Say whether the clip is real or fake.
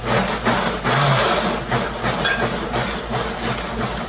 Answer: real